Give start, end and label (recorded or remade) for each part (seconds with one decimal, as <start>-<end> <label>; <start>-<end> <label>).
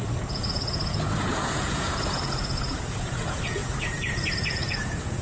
0.0-5.2 remade